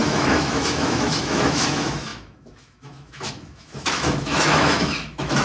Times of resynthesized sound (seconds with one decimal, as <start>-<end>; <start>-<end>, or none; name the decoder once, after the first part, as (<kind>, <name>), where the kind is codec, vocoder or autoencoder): 0.0-5.4 (autoencoder, DAC-VAE)